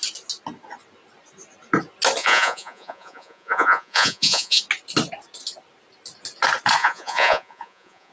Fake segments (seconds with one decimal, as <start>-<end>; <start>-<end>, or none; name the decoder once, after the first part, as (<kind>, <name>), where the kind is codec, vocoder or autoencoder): 2.2-4.6 (vocoder, Vocos); 6.8-8.1